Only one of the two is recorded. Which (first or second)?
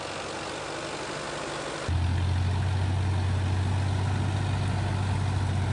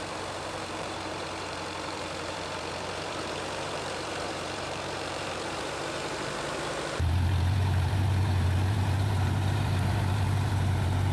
first